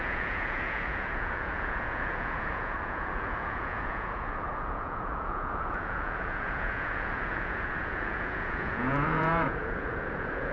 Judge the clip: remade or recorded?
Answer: remade